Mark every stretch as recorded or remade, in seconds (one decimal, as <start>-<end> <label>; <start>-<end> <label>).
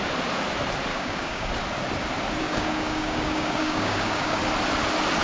0.0-0.9 recorded; 0.9-1.5 remade; 1.5-2.4 recorded; 2.4-4.4 remade; 4.4-5.2 recorded